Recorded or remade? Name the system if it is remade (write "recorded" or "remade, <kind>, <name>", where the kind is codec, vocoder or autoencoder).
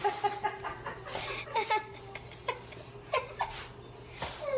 recorded